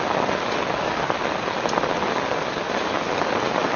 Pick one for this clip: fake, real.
real